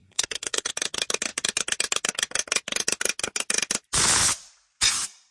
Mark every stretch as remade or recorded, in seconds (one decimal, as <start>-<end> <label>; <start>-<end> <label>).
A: 0.0-0.7 remade; 0.7-5.3 recorded